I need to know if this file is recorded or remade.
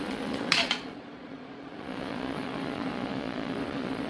remade